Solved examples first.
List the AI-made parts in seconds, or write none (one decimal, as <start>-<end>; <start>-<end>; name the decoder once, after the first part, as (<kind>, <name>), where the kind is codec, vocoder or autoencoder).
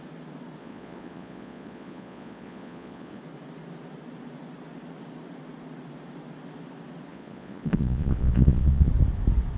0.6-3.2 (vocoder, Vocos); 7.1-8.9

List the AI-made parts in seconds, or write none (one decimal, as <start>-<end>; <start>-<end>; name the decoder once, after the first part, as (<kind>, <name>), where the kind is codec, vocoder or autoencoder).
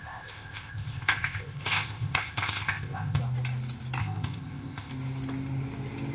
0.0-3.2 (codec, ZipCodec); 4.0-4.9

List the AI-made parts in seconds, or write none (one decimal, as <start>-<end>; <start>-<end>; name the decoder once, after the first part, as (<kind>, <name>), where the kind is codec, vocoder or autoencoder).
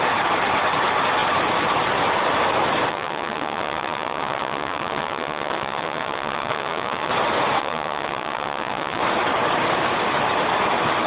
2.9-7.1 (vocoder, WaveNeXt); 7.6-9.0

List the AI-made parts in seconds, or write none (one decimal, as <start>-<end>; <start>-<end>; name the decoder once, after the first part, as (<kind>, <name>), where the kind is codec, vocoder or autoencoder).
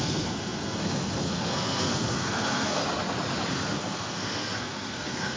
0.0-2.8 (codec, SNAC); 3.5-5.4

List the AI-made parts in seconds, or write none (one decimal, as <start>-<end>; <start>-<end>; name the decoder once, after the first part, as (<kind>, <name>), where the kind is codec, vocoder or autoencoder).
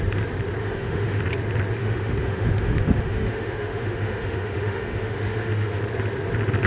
0.6-1.2 (autoencoder, DAC-VAE); 1.8-5.8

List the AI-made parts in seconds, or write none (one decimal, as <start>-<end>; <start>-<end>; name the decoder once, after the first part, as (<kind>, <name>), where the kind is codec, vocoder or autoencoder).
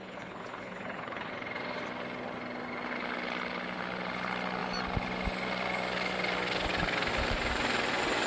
0.0-1.3 (codec, HILCodec)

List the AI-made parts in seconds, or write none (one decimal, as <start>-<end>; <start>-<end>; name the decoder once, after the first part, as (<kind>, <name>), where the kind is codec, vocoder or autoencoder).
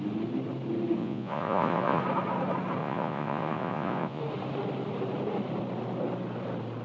1.0-2.0 (vocoder, Vocos); 2.8-4.2